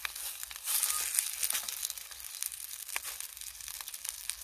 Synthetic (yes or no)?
no